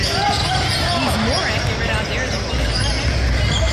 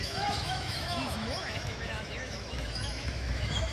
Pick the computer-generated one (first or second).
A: second